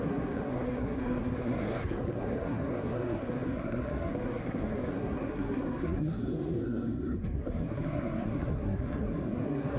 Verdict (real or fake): fake